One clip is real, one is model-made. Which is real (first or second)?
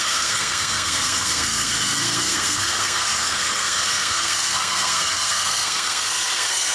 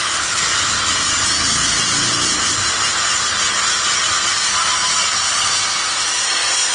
second